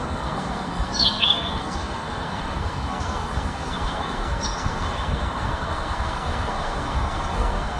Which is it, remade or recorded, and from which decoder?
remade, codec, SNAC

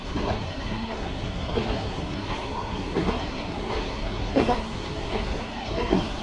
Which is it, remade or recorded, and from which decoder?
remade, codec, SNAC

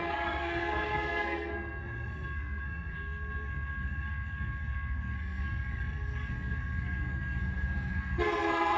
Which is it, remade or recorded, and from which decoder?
remade, codec, SNAC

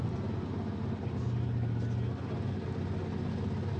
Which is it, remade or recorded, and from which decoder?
recorded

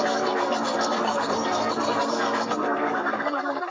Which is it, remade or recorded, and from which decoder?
remade, codec, SNAC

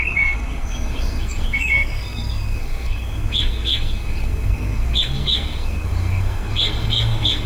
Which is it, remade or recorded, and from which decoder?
remade, codec, SNAC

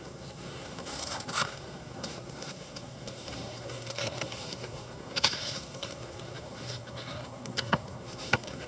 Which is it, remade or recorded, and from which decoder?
remade, codec, SNAC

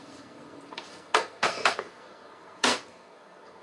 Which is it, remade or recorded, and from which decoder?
remade, codec, SNAC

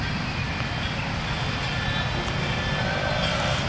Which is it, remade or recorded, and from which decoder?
recorded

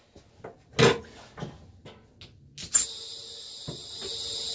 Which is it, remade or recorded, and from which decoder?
recorded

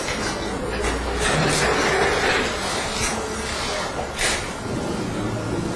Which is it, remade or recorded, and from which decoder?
recorded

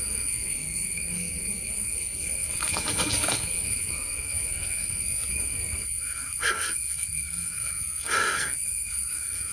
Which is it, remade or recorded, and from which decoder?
remade, codec, SNAC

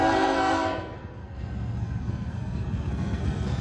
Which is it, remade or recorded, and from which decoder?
remade, codec, SNAC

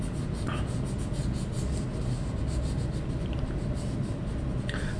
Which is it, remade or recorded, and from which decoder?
recorded